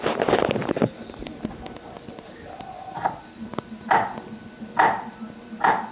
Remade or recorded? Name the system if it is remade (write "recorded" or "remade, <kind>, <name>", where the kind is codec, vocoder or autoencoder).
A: recorded